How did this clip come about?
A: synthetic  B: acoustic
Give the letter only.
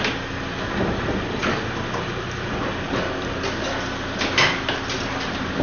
B